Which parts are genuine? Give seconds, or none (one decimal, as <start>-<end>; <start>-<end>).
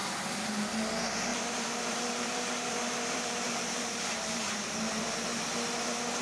0.0-1.3; 5.0-6.2